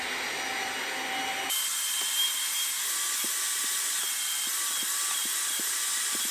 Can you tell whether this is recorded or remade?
recorded